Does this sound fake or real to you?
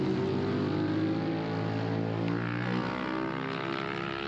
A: real